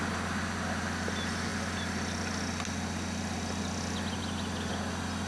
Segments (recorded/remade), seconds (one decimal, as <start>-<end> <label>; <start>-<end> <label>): 0.0-5.3 recorded